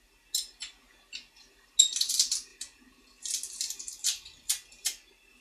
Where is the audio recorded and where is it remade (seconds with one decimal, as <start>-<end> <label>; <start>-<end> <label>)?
0.0-5.4 recorded